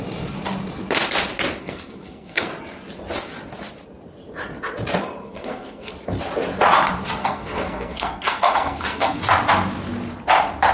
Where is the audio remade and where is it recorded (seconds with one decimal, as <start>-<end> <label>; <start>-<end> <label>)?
0.0-1.6 recorded; 1.6-2.5 remade; 2.5-5.2 recorded; 5.2-5.9 remade; 5.9-7.2 recorded; 7.2-9.2 remade; 9.2-10.7 recorded